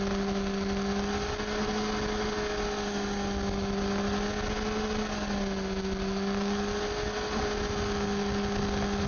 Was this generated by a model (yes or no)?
no